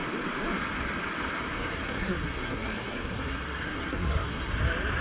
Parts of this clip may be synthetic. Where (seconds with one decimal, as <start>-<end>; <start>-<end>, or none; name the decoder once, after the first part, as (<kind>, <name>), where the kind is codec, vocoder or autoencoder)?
1.5-4.5 (codec, SNAC)